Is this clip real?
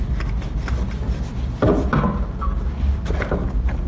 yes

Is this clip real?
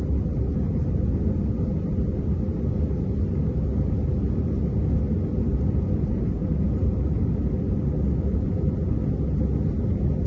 yes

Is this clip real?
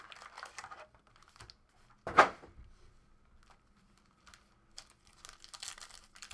yes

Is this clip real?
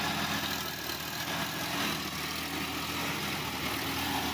yes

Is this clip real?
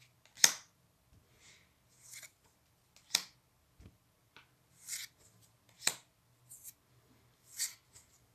yes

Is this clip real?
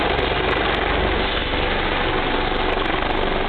yes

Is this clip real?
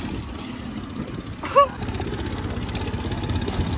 yes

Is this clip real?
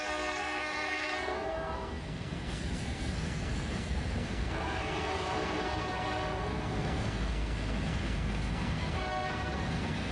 no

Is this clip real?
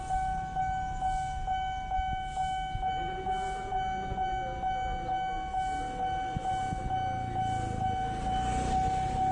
yes